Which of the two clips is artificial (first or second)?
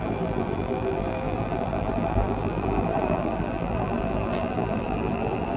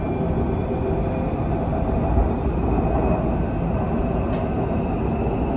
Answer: first